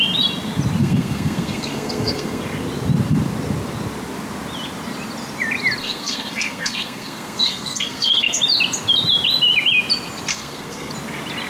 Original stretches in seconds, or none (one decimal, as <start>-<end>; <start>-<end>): 0.0-0.8; 2.4-5.8; 8.4-10.3; 10.9-11.5